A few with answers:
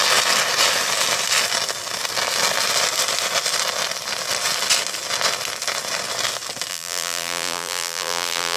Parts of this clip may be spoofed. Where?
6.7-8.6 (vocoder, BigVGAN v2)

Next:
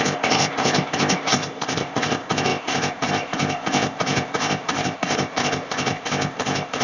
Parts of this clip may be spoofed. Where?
0.0-6.8 (codec, ZipCodec)

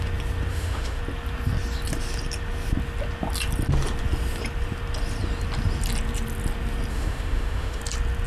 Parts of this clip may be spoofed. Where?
0.5-1.0 (autoencoder, DAC-VAE); 6.9-7.8

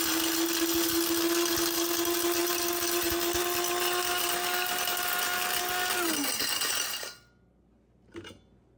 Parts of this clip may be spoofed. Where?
none